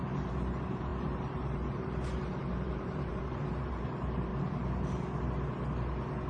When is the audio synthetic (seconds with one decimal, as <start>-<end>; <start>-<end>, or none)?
0.0-4.3